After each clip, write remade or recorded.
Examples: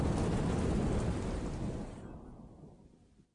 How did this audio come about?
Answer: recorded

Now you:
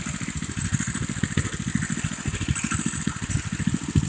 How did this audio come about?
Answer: recorded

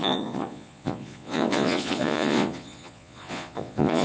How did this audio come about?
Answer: remade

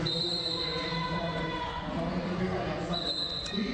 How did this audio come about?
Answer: remade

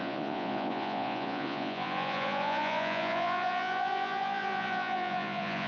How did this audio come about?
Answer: remade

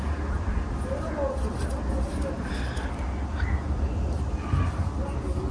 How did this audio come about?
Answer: recorded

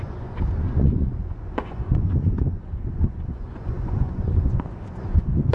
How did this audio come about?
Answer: remade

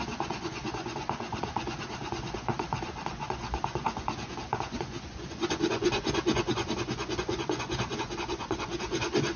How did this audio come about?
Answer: remade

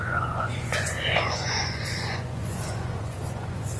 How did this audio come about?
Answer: remade